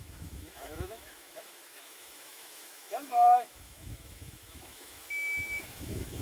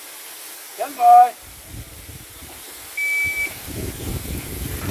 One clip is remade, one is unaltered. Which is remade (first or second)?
first